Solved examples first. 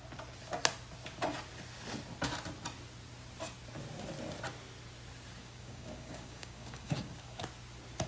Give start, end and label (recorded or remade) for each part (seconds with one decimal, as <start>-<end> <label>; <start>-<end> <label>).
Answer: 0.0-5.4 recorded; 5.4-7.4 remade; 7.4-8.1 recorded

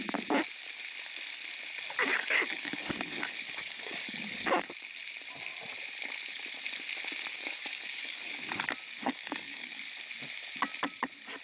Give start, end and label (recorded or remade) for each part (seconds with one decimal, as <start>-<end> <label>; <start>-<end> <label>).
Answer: 0.0-2.1 recorded; 2.1-4.5 remade; 4.5-7.3 recorded; 7.3-8.4 remade; 8.4-9.0 recorded; 9.0-9.8 remade; 9.8-11.4 recorded

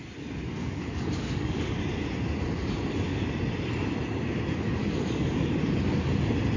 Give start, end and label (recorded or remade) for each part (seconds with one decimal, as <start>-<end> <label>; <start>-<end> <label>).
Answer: 0.0-0.6 recorded; 0.6-1.7 remade; 1.7-4.8 recorded; 4.8-5.5 remade; 5.5-6.6 recorded